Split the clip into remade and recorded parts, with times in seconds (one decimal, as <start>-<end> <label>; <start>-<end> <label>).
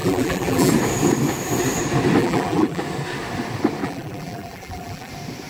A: 0.0-0.7 remade; 0.7-2.2 recorded; 2.2-2.8 remade; 2.8-3.8 recorded; 3.8-5.1 remade; 5.1-5.5 recorded